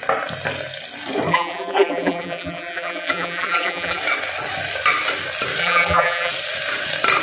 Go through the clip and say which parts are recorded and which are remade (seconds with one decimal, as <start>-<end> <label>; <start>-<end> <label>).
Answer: 0.0-1.3 recorded; 1.3-4.0 remade; 4.0-5.6 recorded; 5.6-6.3 remade; 6.3-7.2 recorded